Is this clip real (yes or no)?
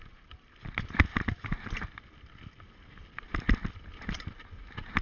yes